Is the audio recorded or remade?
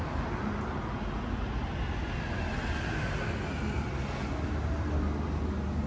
recorded